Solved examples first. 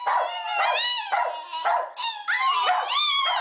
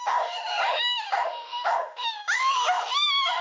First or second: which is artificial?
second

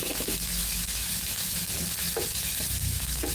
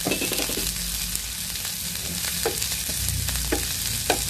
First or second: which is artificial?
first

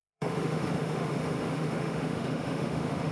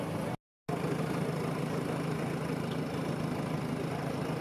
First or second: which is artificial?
first